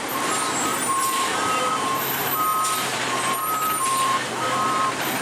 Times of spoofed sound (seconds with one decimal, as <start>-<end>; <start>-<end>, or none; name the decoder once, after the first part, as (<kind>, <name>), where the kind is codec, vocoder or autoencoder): 0.0-5.2 (vocoder, BigVGAN v2)